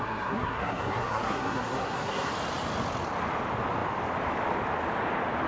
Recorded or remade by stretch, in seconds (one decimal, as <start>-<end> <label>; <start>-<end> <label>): 0.0-2.3 remade; 2.3-5.5 recorded